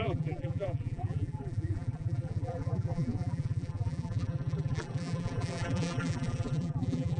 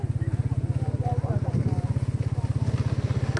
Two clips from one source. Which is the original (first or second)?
second